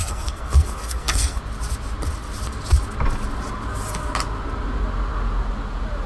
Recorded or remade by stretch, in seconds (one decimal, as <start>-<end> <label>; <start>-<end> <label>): 0.0-1.4 remade; 1.4-6.1 recorded

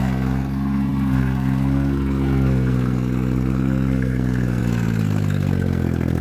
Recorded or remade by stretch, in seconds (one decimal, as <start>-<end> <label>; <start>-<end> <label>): 0.0-6.2 remade